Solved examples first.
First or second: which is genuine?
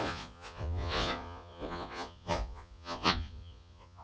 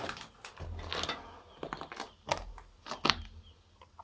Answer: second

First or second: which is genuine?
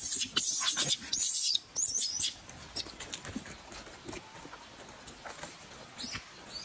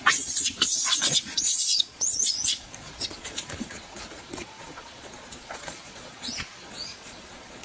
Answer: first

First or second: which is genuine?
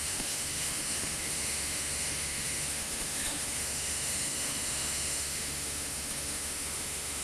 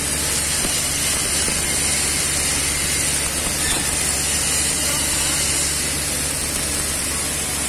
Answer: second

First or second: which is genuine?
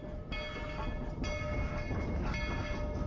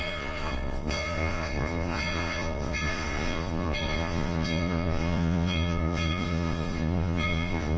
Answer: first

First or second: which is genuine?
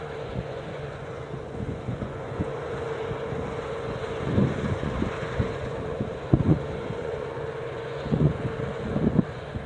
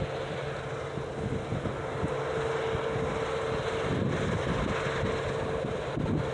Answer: second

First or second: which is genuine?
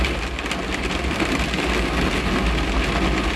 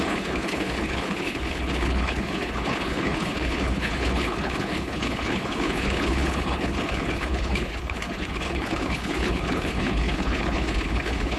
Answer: first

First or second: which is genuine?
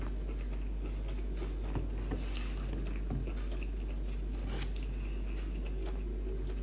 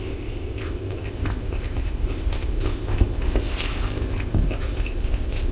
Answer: first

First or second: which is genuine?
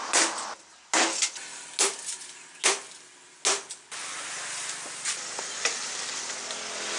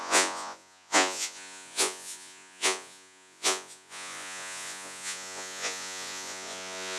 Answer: first